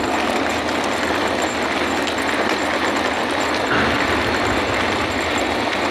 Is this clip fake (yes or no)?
no